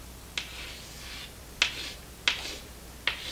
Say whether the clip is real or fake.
real